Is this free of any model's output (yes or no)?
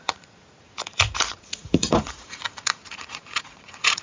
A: no